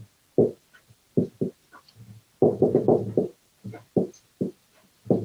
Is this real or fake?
fake